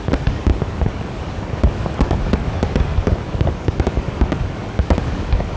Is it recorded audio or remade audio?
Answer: remade